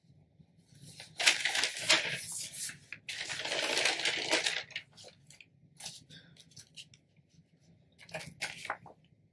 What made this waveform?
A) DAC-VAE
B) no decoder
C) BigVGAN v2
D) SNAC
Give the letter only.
B